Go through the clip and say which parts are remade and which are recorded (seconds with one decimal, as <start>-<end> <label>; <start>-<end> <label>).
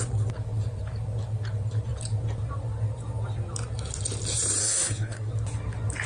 0.0-4.6 recorded; 4.6-5.3 remade; 5.3-6.1 recorded